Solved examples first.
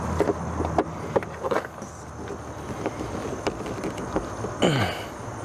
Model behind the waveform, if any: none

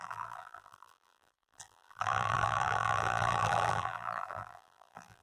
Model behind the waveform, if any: vocoder, BigVGAN v2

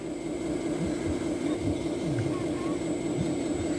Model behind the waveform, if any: none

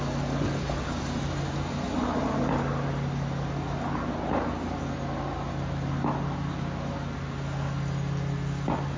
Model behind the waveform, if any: none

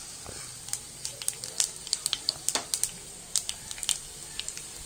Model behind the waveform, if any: vocoder, BigVGAN v2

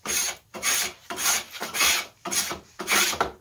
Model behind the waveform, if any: vocoder, BigVGAN v2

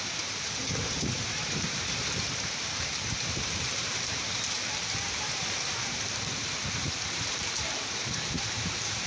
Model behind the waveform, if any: vocoder, BigVGAN v2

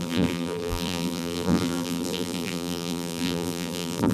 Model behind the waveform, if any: vocoder, BigVGAN v2